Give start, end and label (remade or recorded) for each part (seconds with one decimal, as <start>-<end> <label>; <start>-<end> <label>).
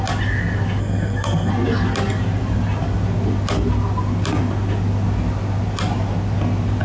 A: 0.0-0.8 recorded; 0.8-1.5 remade; 1.5-6.8 recorded